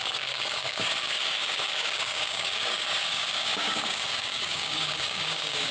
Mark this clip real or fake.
fake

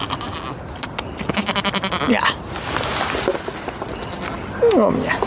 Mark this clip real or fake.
real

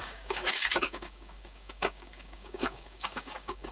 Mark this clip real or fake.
fake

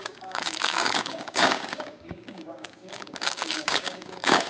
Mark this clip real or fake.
fake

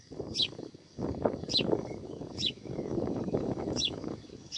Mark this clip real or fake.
fake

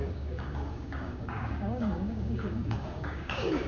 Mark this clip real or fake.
fake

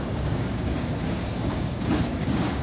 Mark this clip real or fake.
fake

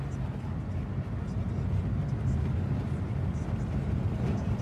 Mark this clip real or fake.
real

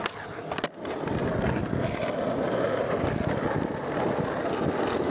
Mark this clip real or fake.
real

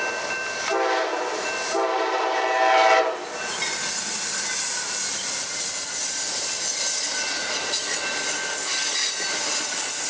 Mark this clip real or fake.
real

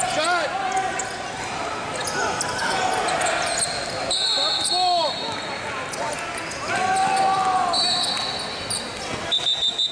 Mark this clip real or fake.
real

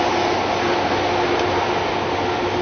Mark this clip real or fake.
real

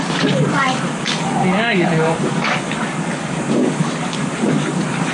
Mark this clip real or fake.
fake